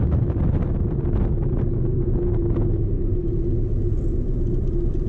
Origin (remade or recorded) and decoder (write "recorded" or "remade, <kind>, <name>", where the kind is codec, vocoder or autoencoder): recorded